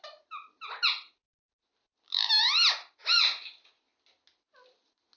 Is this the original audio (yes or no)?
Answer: yes